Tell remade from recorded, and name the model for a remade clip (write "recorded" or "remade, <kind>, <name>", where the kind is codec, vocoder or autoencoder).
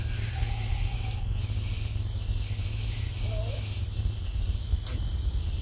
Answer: recorded